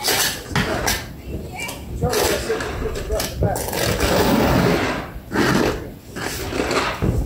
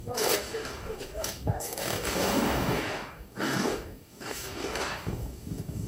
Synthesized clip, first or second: second